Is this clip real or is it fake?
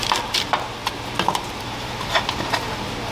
real